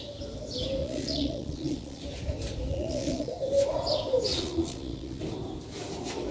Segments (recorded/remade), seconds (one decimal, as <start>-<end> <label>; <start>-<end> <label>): 0.0-0.8 recorded; 0.8-2.0 remade; 2.0-2.7 recorded; 2.7-3.3 remade; 3.3-4.3 recorded; 4.3-5.2 remade; 5.2-6.3 recorded